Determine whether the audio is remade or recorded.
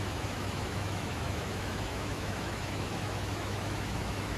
remade